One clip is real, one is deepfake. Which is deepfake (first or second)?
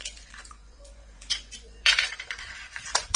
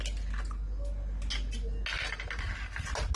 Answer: first